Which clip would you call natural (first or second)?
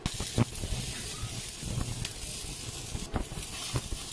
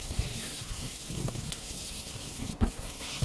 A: first